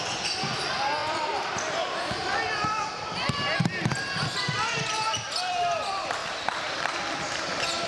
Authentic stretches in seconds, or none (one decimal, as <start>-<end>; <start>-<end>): 0.0-1.0; 1.5-6.2; 7.2-7.9